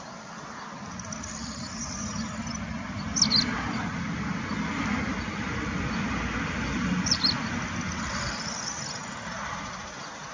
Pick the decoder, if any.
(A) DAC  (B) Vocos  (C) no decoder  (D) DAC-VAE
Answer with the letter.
C